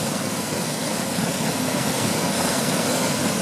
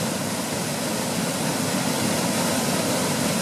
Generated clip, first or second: first